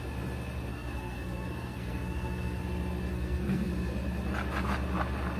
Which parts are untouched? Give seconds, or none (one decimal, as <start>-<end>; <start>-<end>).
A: 0.0-0.7; 2.6-3.1; 3.7-5.4